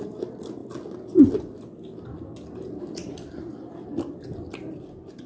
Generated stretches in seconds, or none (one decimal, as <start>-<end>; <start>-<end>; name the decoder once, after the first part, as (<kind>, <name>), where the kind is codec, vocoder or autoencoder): none